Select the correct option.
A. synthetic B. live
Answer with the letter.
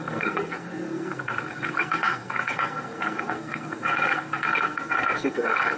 A